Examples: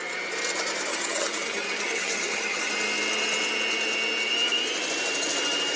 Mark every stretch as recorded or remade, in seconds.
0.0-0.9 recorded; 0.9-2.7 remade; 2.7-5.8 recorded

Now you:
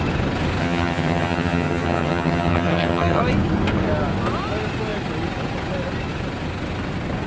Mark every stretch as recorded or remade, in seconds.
0.0-0.6 recorded; 0.6-3.2 remade; 3.2-7.3 recorded

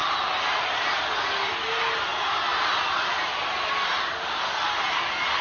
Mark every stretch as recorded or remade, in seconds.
0.0-5.4 recorded

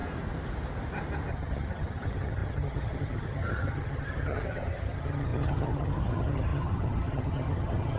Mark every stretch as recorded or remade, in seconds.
0.0-1.3 recorded; 1.3-8.0 remade